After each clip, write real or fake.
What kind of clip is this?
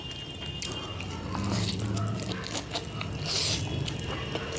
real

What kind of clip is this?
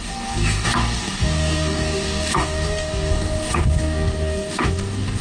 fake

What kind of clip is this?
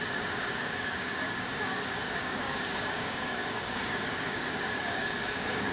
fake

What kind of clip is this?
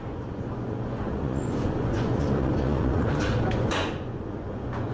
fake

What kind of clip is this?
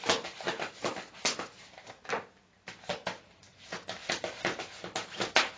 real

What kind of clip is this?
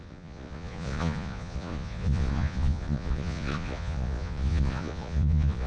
fake